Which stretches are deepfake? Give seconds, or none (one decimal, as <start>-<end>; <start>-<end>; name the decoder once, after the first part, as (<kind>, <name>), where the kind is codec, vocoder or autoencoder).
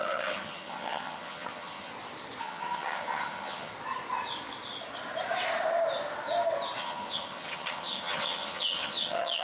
0.0-1.9 (vocoder, HiFi-GAN); 2.4-3.7; 6.8-9.4